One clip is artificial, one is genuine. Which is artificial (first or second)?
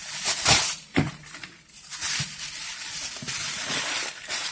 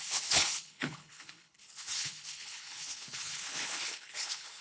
second